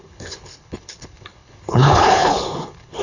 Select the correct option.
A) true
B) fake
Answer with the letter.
B